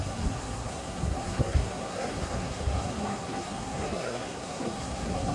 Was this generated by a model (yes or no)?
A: yes